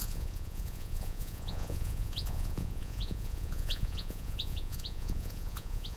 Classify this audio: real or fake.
fake